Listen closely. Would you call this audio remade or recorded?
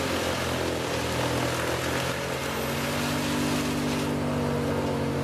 recorded